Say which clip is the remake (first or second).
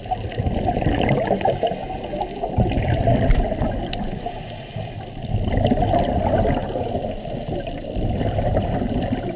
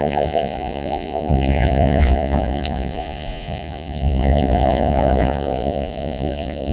second